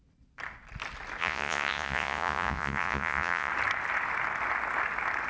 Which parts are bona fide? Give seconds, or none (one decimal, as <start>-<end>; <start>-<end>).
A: 0.0-1.2; 3.5-5.3